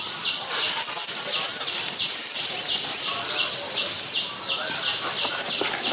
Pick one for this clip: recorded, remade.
recorded